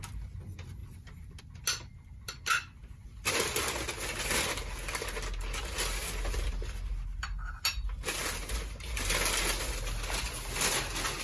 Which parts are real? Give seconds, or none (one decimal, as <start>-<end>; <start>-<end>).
0.0-0.8; 1.4-11.2